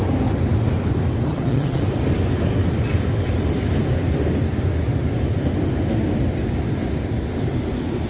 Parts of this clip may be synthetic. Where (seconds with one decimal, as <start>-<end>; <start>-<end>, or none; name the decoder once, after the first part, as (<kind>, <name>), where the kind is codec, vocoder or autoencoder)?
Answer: 1.3-1.8 (vocoder, HiFi-GAN)